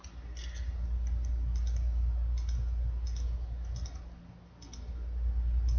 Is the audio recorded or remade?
recorded